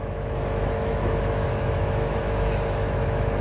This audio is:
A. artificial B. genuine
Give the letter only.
A